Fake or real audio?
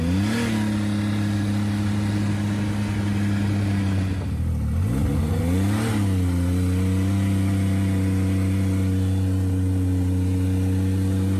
real